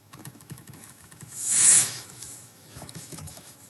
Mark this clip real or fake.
fake